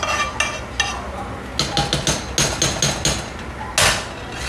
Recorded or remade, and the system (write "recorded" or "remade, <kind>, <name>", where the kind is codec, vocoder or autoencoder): recorded